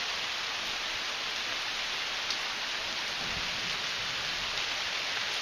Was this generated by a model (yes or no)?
no